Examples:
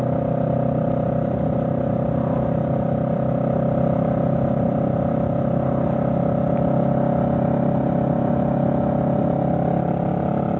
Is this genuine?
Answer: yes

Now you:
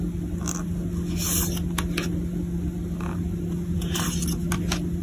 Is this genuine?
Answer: yes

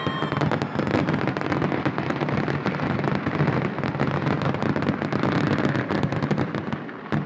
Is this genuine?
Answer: yes